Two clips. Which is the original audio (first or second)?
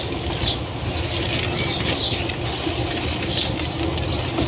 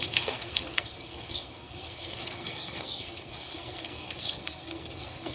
first